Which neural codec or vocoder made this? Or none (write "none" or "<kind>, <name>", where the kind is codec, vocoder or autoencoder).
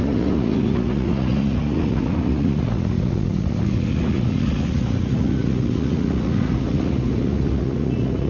vocoder, Vocos